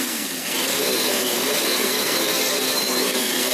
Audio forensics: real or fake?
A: fake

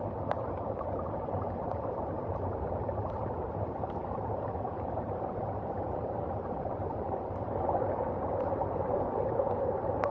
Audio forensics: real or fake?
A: fake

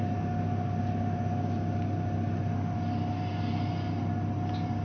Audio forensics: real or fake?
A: real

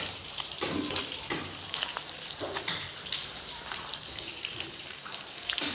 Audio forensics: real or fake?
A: fake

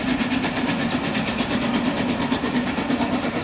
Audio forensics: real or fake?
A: real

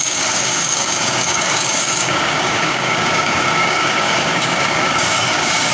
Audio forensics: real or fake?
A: fake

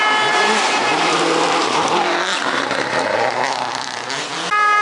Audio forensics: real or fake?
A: fake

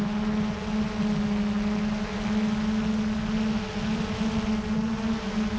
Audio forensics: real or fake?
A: real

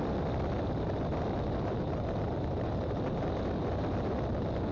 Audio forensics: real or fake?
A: real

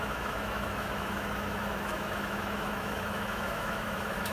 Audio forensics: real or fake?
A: fake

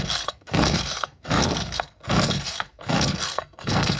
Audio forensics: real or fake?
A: fake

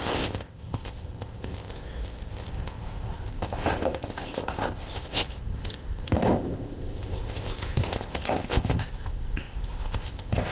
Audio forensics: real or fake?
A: fake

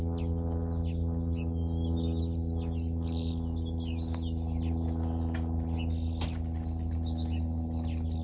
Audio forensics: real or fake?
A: real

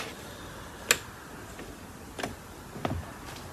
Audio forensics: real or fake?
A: real